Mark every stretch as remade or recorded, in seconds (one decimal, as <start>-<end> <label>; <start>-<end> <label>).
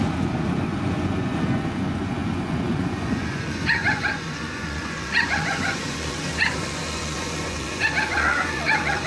0.0-9.1 remade